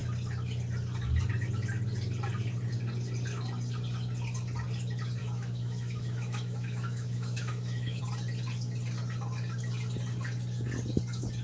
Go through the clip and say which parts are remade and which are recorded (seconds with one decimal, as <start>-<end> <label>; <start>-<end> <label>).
0.0-5.2 recorded; 5.2-8.0 remade; 8.0-11.4 recorded